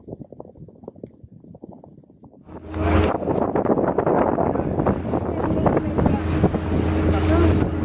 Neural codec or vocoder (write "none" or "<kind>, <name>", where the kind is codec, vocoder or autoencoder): none